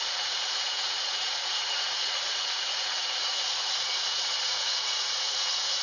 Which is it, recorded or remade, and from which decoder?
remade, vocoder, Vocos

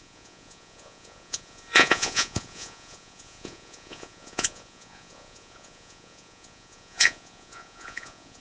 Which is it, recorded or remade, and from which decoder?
remade, vocoder, Vocos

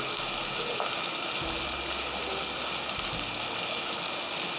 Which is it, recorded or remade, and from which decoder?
recorded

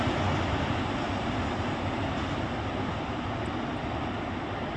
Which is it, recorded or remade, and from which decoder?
recorded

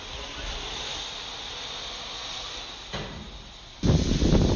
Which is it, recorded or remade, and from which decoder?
recorded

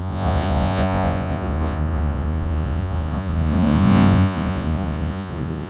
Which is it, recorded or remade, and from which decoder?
remade, vocoder, Vocos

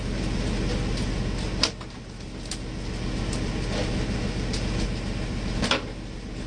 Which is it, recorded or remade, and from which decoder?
recorded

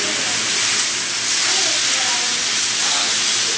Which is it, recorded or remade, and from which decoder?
recorded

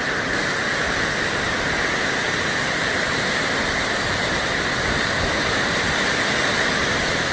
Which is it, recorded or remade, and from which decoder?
recorded